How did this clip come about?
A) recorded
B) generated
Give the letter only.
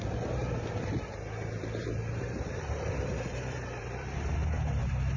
B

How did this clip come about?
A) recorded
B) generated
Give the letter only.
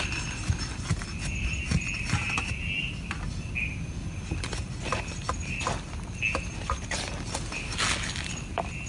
A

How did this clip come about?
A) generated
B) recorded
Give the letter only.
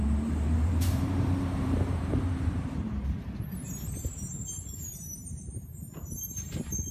A